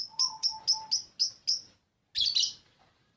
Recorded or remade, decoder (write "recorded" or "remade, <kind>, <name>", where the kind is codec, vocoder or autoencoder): recorded